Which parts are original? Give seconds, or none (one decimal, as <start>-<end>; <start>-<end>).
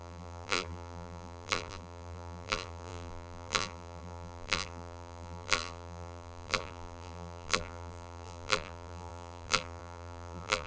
none